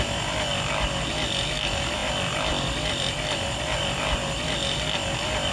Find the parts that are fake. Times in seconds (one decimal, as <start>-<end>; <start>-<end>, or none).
0.0-0.5; 1.1-5.5